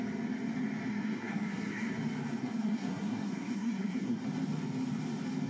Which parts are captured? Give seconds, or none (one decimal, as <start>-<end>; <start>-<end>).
0.0-0.9; 1.9-2.4; 4.2-5.5